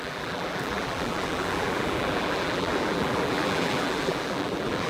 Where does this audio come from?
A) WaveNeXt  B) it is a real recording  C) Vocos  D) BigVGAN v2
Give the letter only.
D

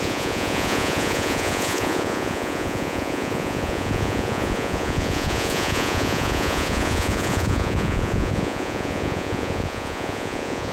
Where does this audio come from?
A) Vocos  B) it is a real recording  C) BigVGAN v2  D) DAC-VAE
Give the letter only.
A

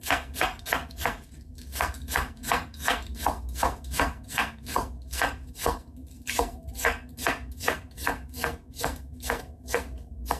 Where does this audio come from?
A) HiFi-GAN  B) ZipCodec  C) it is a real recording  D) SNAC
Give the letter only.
D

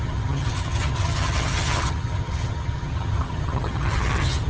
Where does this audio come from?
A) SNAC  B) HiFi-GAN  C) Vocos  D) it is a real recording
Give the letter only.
B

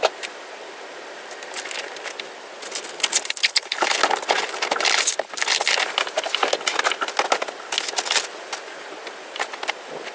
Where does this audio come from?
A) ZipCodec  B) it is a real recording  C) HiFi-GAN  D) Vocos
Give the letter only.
B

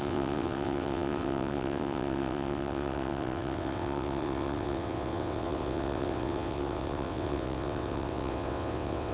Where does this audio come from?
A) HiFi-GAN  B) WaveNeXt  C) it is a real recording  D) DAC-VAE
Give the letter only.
B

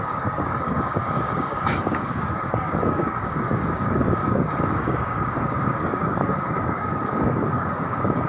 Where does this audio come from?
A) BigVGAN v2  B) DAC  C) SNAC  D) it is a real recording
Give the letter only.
B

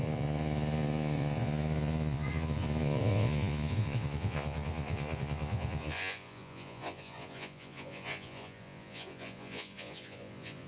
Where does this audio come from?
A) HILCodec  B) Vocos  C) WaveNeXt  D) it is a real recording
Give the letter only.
B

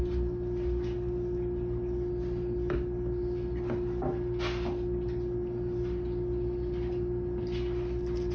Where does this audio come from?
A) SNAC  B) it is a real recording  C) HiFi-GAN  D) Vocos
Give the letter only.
B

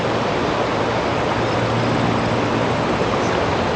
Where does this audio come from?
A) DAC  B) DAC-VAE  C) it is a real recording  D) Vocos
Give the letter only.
C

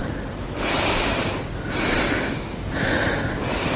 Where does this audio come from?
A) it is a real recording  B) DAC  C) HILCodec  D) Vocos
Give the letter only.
A